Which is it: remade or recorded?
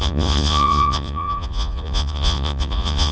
remade